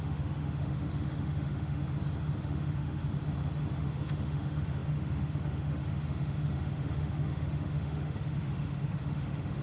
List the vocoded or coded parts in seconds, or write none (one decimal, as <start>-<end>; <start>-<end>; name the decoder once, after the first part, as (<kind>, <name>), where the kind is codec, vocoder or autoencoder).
0.0-1.8 (autoencoder, DAC-VAE); 2.4-3.0; 3.8-9.6